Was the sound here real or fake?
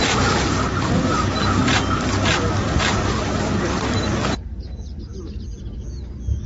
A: real